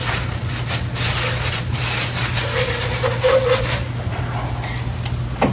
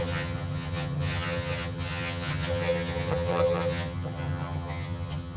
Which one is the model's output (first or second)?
second